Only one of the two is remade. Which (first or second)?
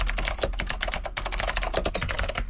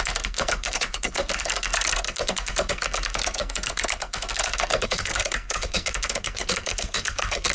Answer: second